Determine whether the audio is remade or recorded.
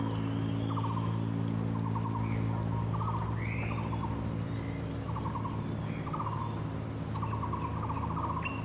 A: recorded